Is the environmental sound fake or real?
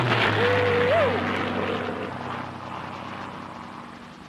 real